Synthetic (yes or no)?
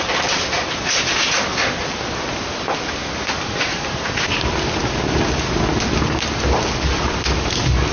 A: no